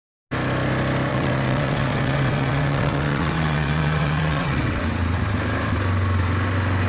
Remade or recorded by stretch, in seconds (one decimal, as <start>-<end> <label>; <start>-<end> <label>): 0.0-1.1 recorded; 1.1-5.2 remade; 5.2-6.9 recorded